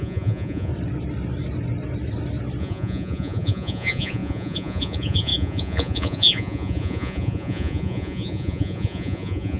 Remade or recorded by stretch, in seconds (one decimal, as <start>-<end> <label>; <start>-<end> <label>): 0.0-0.7 remade; 0.7-2.6 recorded; 2.6-9.6 remade